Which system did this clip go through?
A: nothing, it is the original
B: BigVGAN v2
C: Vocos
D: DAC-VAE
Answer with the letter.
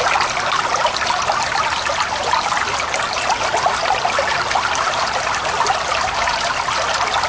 A